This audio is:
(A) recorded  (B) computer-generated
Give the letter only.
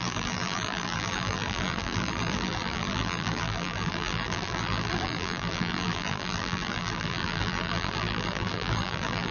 B